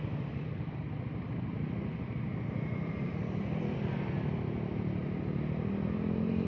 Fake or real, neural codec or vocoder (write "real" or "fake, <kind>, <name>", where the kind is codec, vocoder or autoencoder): real